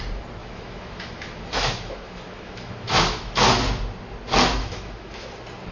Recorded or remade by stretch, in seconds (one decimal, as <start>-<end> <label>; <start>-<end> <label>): 0.0-0.4 recorded; 0.4-3.5 remade; 3.5-4.6 recorded; 4.6-5.3 remade; 5.3-5.7 recorded